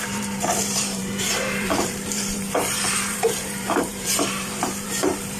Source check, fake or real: fake